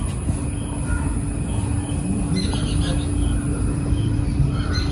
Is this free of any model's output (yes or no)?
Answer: yes